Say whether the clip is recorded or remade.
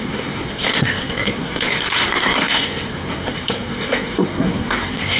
remade